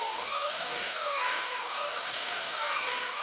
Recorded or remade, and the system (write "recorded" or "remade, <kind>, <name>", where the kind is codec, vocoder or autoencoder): remade, codec, DAC